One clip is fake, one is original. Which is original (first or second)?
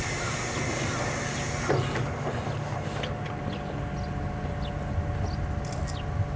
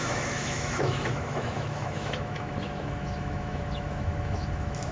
first